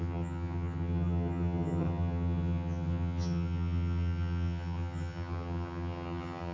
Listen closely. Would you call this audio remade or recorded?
remade